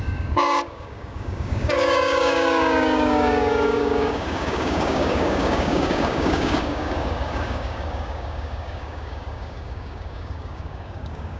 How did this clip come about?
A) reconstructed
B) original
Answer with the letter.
A